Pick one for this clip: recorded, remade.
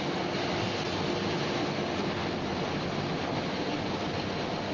recorded